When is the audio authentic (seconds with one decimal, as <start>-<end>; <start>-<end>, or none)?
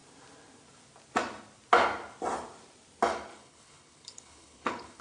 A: 0.0-3.3